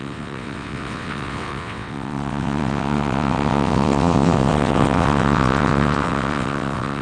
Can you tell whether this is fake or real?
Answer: fake